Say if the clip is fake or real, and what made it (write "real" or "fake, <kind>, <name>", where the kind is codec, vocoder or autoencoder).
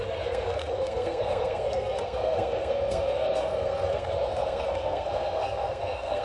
fake, codec, SNAC